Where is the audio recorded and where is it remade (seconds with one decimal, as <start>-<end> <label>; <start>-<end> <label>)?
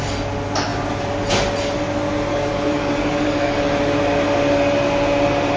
0.0-2.3 recorded; 2.3-3.7 remade; 3.7-5.6 recorded